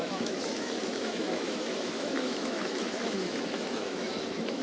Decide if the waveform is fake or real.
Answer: fake